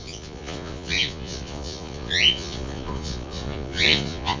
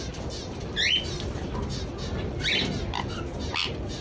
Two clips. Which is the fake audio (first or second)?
first